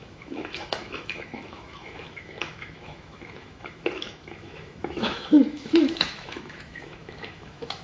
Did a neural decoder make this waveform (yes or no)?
yes